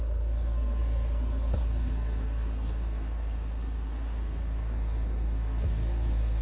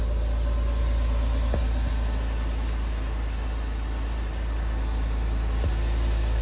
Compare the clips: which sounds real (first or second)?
second